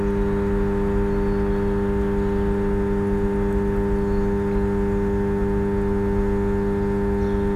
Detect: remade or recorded recorded